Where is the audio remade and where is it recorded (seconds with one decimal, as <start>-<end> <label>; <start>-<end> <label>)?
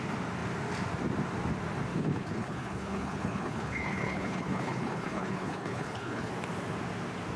0.0-1.9 recorded; 1.9-6.3 remade; 6.3-7.4 recorded